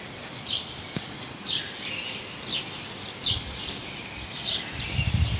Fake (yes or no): no